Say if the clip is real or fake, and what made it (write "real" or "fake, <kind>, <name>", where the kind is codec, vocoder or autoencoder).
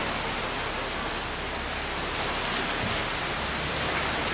real